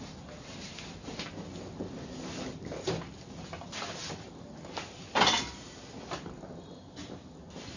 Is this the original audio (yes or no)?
yes